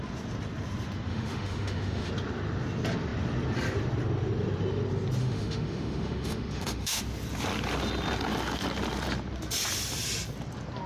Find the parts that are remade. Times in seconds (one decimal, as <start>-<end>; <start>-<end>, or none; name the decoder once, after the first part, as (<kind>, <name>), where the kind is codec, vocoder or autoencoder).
1.1-2.1 (autoencoder, DAC-VAE); 5.2-7.0